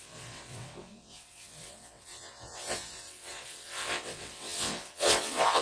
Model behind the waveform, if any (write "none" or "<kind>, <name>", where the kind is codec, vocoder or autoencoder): vocoder, WaveNeXt